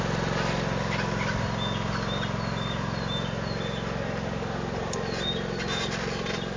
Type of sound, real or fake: real